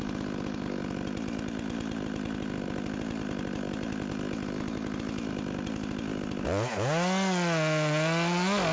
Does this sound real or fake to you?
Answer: real